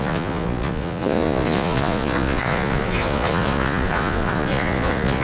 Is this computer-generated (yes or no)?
yes